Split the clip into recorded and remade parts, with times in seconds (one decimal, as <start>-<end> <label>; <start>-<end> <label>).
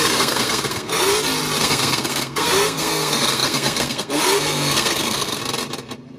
0.0-1.1 remade; 1.1-1.6 recorded; 1.6-5.4 remade; 5.4-6.2 recorded